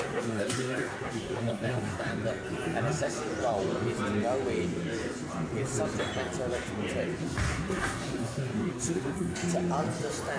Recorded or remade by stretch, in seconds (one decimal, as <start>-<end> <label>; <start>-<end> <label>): 0.0-2.1 remade; 2.1-7.2 recorded; 7.2-9.3 remade; 9.3-10.4 recorded